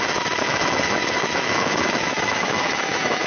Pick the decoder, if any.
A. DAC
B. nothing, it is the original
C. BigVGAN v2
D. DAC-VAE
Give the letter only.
D